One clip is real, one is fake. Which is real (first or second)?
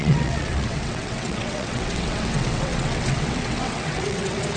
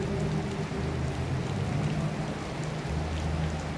second